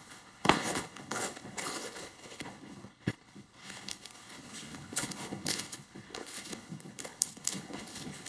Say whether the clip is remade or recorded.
remade